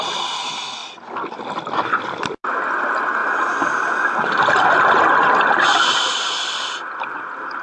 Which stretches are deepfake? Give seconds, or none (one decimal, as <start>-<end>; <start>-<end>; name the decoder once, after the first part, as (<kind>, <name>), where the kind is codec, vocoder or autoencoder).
none